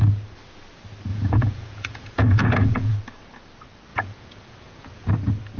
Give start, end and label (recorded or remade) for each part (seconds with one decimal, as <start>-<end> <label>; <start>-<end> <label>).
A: 0.0-1.1 recorded; 1.1-3.0 remade; 3.0-3.9 recorded; 3.9-5.1 remade; 5.1-5.6 recorded